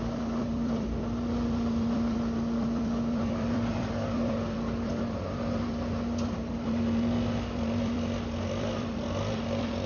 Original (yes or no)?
no